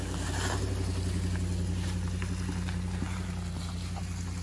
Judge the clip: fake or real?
real